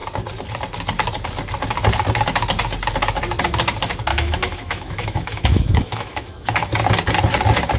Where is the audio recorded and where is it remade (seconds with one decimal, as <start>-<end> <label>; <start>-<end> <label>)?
0.0-4.1 recorded; 4.1-6.7 remade; 6.7-7.8 recorded